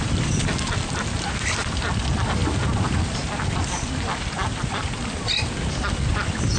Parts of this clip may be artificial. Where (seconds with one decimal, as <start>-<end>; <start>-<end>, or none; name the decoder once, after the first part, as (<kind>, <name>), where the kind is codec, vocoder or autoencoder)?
none